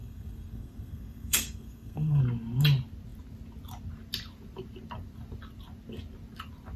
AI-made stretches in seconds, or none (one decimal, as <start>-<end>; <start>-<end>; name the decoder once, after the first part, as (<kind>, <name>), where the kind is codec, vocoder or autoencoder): 0.0-2.2 (codec, SNAC)